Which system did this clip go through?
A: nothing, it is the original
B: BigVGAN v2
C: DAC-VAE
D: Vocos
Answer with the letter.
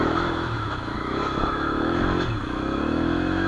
C